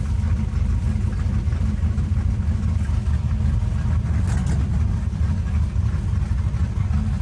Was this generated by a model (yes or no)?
no